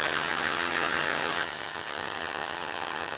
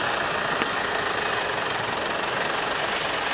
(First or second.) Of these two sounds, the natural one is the second